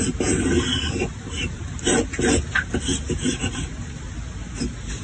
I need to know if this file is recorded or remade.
recorded